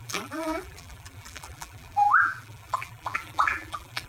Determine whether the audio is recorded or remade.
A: remade